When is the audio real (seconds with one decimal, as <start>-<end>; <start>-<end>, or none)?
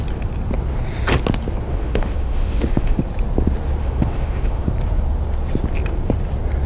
0.0-1.7; 3.0-3.8; 4.7-6.7